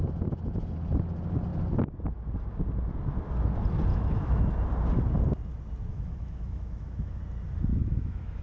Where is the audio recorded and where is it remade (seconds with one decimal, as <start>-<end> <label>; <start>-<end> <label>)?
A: 0.0-3.9 recorded; 3.9-4.4 remade; 4.4-5.9 recorded; 5.9-7.2 remade; 7.2-7.7 recorded; 7.7-8.4 remade